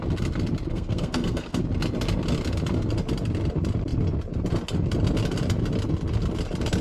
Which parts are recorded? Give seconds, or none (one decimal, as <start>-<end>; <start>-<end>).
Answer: 0.0-0.7; 1.6-6.8